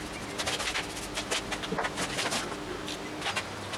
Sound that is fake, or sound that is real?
real